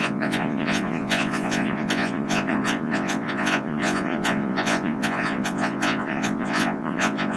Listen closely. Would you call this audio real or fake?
fake